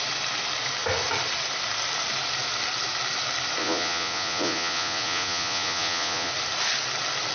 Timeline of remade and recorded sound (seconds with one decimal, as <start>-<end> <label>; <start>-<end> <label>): 0.0-3.6 recorded; 3.6-6.3 remade; 6.3-7.3 recorded